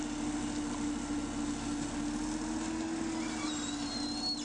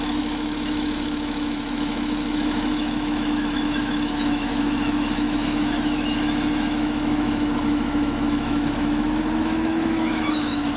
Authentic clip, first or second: first